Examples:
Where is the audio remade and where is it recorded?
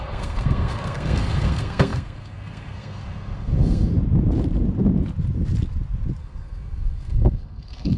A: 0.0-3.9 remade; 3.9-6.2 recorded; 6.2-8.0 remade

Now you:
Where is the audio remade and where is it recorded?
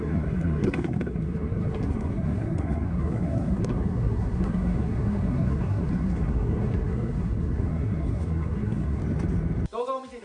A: 0.0-9.0 remade; 9.0-10.2 recorded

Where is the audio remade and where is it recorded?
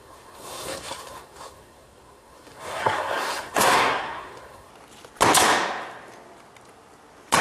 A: 0.0-4.7 remade; 4.7-7.4 recorded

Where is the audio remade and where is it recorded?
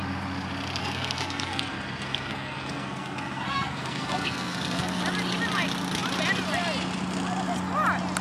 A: 0.0-0.8 recorded; 0.8-5.0 remade; 5.0-8.2 recorded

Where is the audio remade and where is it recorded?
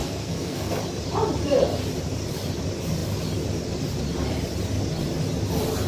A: 0.0-0.8 remade; 0.8-5.9 recorded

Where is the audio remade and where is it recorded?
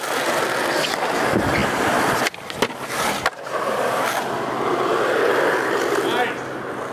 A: 0.0-6.9 recorded